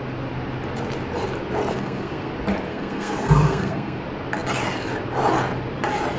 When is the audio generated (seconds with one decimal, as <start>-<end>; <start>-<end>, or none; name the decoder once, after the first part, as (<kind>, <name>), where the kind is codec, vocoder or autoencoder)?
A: 1.7-2.3 (codec, SNAC); 2.7-4.0